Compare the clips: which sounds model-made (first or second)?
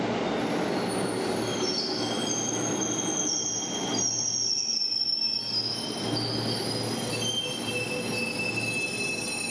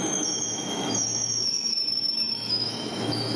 second